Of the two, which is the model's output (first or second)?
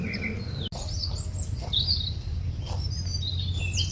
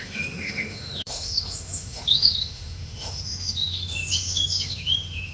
second